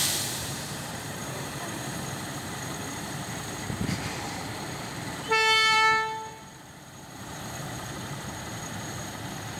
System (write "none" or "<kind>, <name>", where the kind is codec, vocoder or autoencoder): vocoder, BigVGAN v2